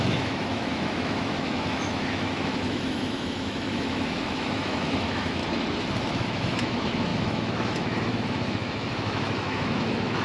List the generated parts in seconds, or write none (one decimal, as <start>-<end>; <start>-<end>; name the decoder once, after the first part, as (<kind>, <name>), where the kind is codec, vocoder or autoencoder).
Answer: 0.0-5.4 (autoencoder, DAC-VAE); 6.0-10.2